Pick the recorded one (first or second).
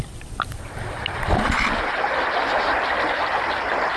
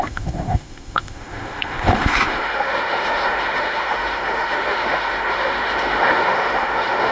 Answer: first